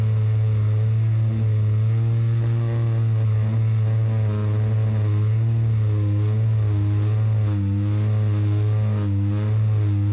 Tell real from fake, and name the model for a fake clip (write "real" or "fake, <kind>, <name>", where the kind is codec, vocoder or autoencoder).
real